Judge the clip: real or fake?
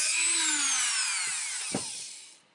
real